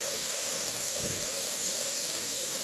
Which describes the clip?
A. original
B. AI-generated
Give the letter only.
B